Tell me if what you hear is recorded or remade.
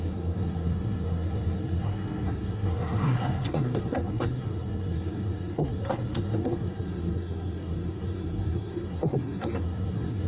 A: remade